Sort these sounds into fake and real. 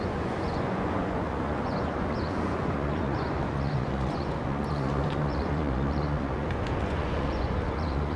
fake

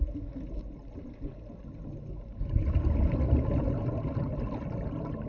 real